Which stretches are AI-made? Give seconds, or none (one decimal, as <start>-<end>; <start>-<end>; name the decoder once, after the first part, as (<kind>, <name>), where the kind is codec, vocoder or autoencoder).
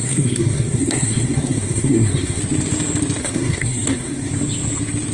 0.0-2.4 (codec, SNAC); 3.2-4.3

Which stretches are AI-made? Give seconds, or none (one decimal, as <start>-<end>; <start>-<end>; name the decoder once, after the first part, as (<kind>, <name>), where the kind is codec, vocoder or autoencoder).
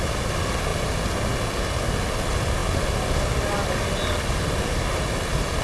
none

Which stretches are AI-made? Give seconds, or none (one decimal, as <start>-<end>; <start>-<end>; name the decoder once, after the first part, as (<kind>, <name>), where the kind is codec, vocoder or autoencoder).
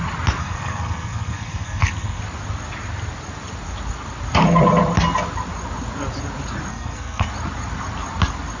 0.4-2.2 (codec, SNAC); 6.7-7.3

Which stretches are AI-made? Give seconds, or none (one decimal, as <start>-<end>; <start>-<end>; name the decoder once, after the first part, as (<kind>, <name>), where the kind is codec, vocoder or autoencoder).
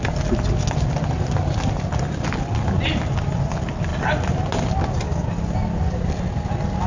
none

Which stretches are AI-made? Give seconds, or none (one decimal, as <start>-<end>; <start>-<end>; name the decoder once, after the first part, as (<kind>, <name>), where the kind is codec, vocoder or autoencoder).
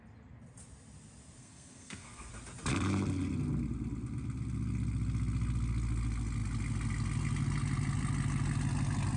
1.4-2.3 (codec, SNAC)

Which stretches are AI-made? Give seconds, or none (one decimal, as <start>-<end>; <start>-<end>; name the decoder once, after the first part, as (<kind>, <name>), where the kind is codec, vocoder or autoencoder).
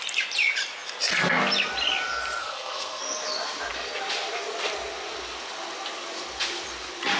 2.4-3.0 (codec, SNAC)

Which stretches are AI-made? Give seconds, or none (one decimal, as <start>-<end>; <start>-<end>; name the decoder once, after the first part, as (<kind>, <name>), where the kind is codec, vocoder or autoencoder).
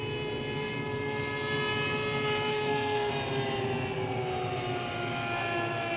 2.5-3.1 (codec, SNAC)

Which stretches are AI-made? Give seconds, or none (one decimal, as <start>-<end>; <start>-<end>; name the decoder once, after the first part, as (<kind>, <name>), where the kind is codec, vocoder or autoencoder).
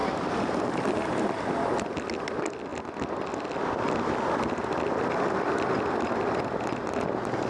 none